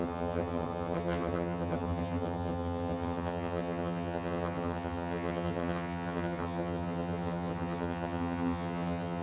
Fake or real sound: fake